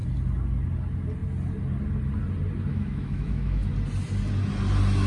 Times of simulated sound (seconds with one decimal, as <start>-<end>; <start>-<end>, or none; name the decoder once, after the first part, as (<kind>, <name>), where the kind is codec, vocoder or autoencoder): 2.7-3.7 (autoencoder, DAC-VAE)